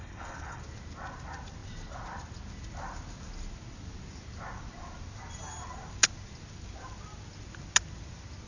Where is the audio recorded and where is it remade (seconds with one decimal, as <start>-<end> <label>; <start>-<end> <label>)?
0.0-0.6 remade; 0.6-8.5 recorded